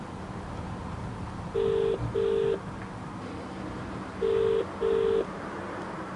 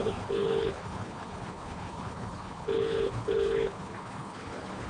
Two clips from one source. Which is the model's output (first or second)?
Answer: second